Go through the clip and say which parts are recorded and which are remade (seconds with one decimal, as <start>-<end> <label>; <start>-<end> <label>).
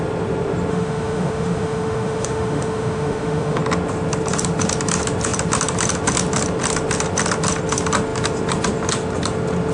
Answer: 0.0-0.7 recorded; 0.7-3.6 remade; 3.6-9.7 recorded